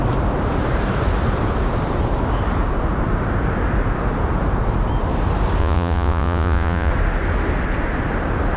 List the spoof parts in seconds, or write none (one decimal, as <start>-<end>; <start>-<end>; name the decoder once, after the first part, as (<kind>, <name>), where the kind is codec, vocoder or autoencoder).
5.6-6.9 (vocoder, Vocos)